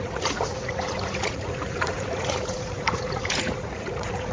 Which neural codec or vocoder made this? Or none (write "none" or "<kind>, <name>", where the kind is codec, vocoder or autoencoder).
vocoder, Vocos